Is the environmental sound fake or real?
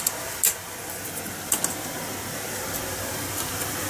real